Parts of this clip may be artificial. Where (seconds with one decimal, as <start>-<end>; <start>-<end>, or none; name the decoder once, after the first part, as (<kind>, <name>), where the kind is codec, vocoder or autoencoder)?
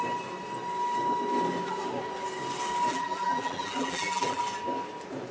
2.9-4.4 (vocoder, BigVGAN v2)